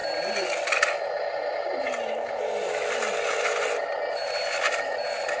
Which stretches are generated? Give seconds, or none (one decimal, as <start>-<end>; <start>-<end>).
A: none